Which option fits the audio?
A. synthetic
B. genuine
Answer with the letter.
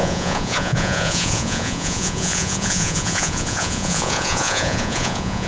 A